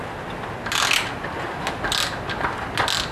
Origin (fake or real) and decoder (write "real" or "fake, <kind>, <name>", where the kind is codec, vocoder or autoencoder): real